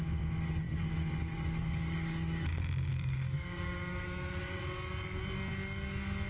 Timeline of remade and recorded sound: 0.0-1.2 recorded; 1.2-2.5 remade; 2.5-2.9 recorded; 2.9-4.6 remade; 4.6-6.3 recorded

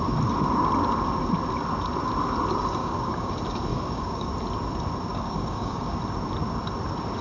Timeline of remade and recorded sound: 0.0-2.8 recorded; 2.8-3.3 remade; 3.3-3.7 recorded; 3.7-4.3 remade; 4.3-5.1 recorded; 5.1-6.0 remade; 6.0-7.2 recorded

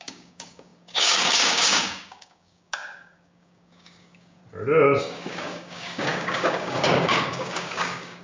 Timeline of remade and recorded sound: 0.0-4.4 remade; 4.4-5.0 recorded; 5.0-8.2 remade

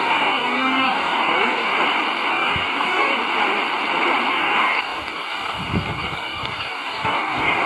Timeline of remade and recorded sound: 0.0-1.7 remade; 1.7-2.3 recorded; 2.3-3.1 remade; 3.1-4.3 recorded; 4.3-7.7 remade